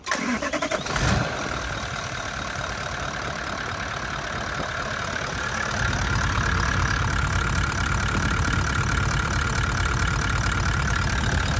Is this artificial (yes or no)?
yes